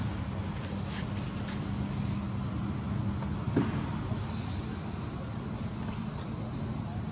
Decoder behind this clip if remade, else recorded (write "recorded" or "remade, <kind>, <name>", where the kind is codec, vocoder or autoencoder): recorded